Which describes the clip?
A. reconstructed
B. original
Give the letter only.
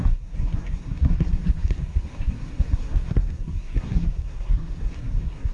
A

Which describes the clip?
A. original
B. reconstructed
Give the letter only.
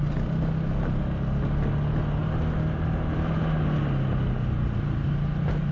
A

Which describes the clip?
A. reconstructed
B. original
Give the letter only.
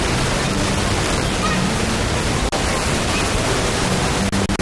B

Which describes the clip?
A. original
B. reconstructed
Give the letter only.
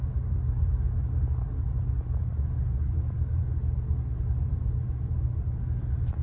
A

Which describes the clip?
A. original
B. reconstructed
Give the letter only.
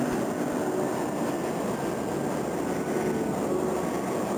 A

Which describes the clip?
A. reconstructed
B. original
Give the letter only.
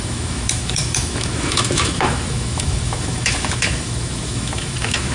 A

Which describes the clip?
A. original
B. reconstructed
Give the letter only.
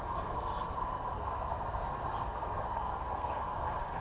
B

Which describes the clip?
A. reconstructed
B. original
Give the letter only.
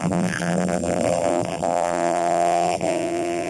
A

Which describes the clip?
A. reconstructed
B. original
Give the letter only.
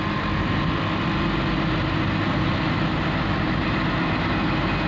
B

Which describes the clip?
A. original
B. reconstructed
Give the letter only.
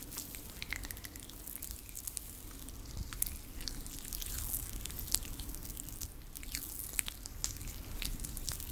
A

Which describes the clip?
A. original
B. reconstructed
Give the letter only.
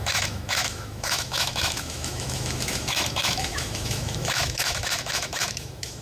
B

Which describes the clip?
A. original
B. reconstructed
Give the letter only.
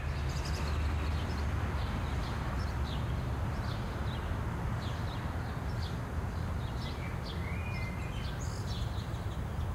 A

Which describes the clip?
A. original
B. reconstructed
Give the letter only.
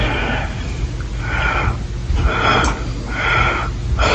A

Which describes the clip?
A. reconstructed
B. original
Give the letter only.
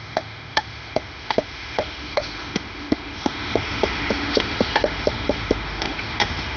A